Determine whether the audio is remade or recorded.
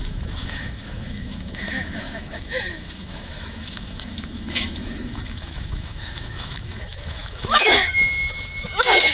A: remade